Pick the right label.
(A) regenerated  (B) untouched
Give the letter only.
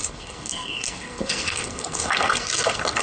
A